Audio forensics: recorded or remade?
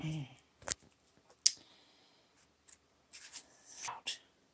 recorded